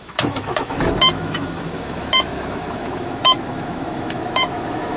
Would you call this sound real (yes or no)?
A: no